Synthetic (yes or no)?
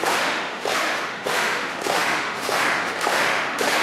yes